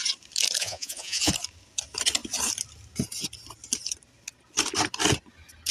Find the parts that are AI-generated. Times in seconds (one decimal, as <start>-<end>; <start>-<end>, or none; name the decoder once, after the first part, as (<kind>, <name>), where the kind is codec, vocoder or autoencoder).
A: 0.6-1.3 (vocoder, Vocos)